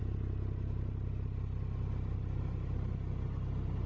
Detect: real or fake real